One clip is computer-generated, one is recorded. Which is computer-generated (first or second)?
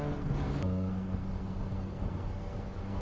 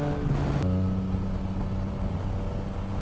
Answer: first